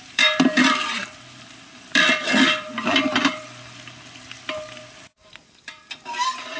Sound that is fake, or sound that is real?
fake